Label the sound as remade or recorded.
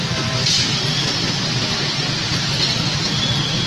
recorded